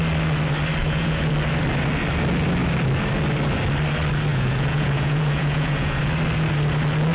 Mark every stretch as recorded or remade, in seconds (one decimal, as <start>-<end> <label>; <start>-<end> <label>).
0.0-0.8 recorded; 0.8-1.3 remade; 1.3-4.3 recorded; 4.3-6.0 remade; 6.0-7.1 recorded

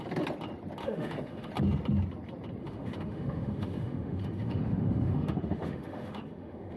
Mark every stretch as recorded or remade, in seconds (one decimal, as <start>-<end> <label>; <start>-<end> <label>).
0.0-0.8 recorded; 0.8-1.5 remade; 1.5-2.6 recorded; 2.6-6.8 remade

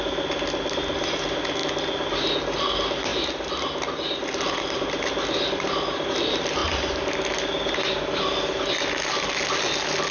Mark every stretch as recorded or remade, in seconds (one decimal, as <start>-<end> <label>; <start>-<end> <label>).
0.0-10.1 recorded

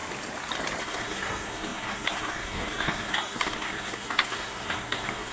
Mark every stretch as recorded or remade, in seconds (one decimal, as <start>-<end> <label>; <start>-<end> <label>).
0.0-0.8 recorded; 0.8-5.3 remade

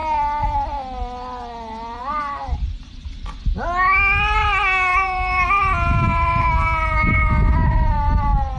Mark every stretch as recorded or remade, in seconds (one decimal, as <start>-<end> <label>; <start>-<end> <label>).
0.0-2.0 recorded; 2.0-3.1 remade; 3.1-4.9 recorded; 4.9-6.6 remade; 6.6-7.6 recorded; 7.6-8.6 remade

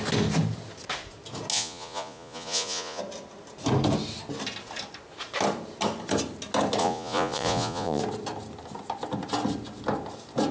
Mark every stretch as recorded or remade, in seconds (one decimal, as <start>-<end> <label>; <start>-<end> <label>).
0.0-1.5 recorded; 1.5-3.0 remade; 3.0-6.8 recorded; 6.8-8.0 remade; 8.0-10.5 recorded

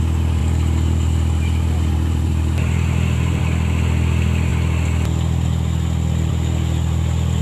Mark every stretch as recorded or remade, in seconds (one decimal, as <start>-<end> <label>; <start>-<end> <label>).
0.0-0.4 recorded; 0.4-3.4 remade; 3.4-7.4 recorded

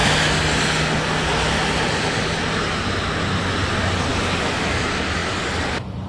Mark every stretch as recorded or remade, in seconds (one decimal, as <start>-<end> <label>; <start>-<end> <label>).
0.0-6.1 recorded